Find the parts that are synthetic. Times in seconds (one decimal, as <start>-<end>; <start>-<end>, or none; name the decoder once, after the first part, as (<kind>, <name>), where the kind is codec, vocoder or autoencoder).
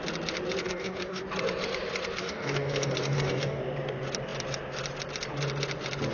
0.6-1.2 (codec, DAC); 2.2-3.6